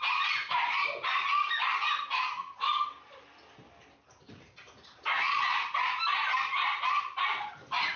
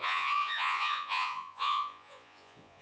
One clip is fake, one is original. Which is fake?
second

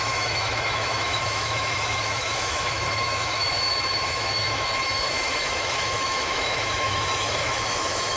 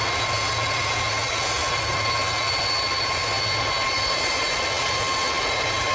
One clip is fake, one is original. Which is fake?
first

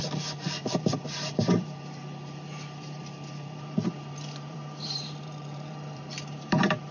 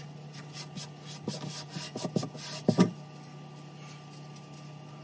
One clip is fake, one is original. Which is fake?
first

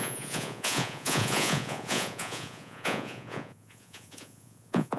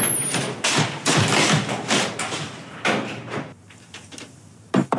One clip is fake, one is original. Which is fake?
first